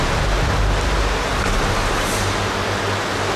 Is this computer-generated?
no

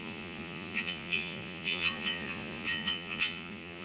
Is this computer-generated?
yes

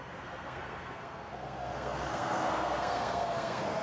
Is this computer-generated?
yes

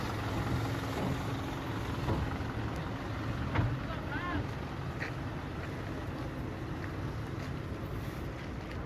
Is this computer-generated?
no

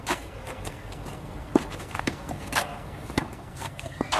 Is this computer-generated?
yes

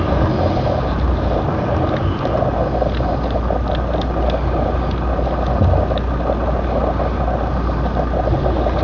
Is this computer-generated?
no